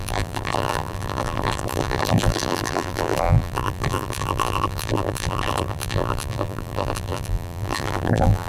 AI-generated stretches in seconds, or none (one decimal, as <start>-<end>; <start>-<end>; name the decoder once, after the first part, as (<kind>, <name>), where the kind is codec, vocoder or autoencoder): 0.0-8.5 (vocoder, BigVGAN v2)